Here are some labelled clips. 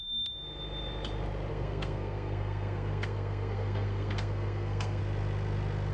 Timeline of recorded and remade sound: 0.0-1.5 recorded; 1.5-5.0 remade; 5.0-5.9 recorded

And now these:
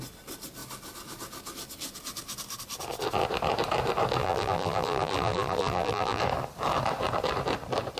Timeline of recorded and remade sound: 0.0-4.2 recorded; 4.2-6.2 remade; 6.2-8.0 recorded

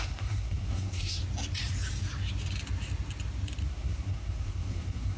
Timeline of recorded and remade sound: 0.0-1.2 remade; 1.2-3.7 recorded; 3.7-5.2 remade

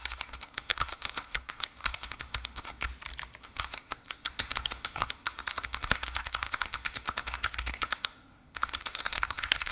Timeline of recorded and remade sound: 0.0-2.9 remade; 2.9-3.4 recorded; 3.4-9.7 remade

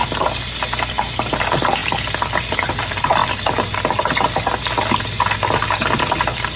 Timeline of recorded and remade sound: 0.0-6.6 recorded